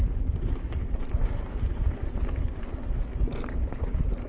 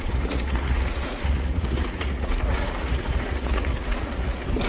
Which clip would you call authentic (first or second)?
first